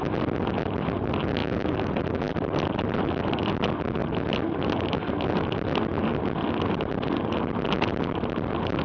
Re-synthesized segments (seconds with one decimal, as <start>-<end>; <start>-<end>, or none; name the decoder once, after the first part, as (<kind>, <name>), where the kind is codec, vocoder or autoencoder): 1.4-2.3 (vocoder, BigVGAN v2)